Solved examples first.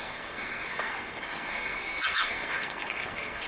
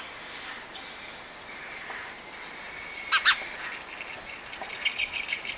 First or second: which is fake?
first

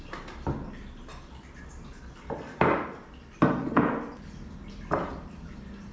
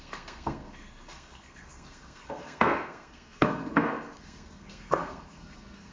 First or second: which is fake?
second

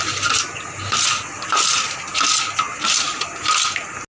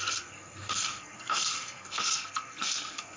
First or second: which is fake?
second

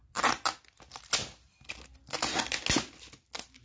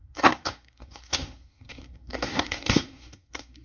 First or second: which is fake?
second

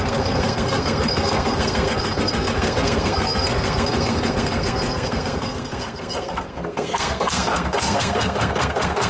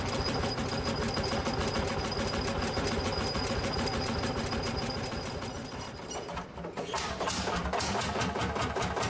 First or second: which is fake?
first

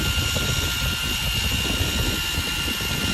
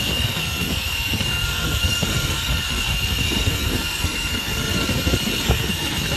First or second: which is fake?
second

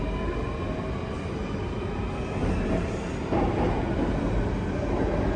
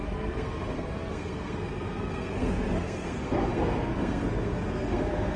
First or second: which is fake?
second